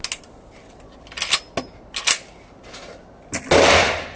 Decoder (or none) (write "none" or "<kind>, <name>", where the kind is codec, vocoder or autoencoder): none